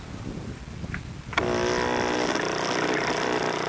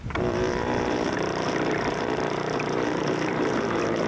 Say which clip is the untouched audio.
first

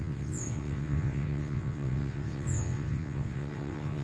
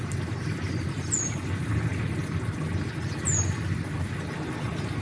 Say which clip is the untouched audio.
second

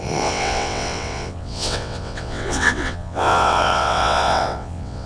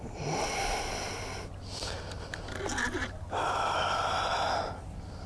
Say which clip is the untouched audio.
second